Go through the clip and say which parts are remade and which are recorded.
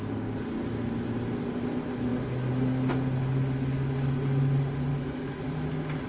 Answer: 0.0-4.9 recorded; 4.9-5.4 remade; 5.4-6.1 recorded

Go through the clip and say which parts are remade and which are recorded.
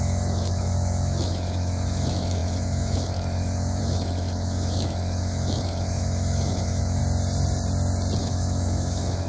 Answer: 0.0-7.0 remade; 7.0-8.2 recorded; 8.2-9.3 remade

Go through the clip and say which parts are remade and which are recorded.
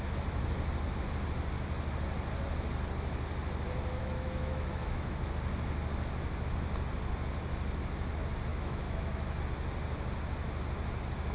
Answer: 0.0-4.0 recorded; 4.0-5.3 remade; 5.3-8.5 recorded; 8.5-9.4 remade; 9.4-11.3 recorded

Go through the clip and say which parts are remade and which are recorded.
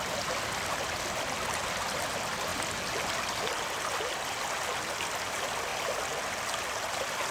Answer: 0.0-7.3 recorded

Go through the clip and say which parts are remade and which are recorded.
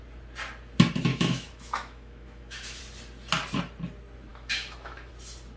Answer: 0.0-1.1 recorded; 1.1-2.8 remade; 2.8-4.3 recorded; 4.3-5.1 remade; 5.1-5.6 recorded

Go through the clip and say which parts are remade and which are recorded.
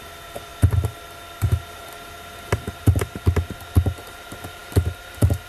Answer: 0.0-5.5 recorded